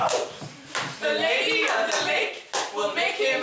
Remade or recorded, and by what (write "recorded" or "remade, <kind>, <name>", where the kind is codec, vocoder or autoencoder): recorded